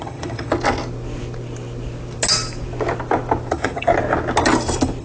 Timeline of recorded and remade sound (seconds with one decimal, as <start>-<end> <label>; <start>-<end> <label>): 0.0-0.5 remade; 0.5-3.5 recorded; 3.5-3.9 remade; 3.9-5.0 recorded